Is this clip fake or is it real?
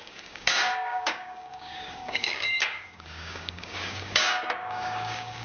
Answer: fake